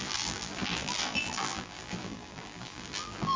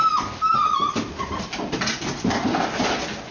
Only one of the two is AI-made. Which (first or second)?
first